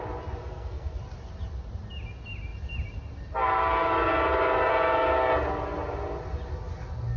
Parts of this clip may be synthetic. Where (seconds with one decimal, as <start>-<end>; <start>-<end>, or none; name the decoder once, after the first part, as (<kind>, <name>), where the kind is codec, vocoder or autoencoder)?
0.4-1.0 (codec, SNAC)